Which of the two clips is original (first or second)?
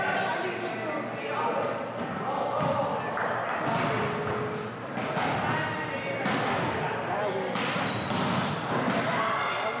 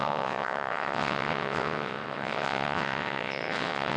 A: first